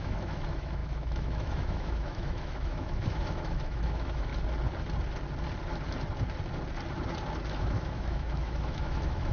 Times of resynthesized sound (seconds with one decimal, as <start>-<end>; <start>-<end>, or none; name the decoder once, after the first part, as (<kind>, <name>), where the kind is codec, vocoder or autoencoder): 0.0-4.3 (autoencoder, DAC-VAE); 7.6-9.3